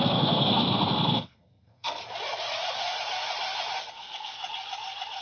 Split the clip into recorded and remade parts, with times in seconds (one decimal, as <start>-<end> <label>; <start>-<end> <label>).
0.0-2.0 remade; 2.0-3.9 recorded; 3.9-4.4 remade; 4.4-5.2 recorded